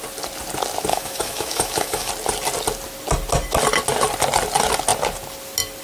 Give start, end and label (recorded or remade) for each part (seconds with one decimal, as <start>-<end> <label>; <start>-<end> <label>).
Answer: 0.0-0.9 recorded; 0.9-2.1 remade; 2.1-5.8 recorded